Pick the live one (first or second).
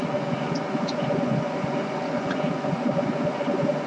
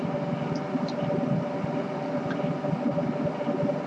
second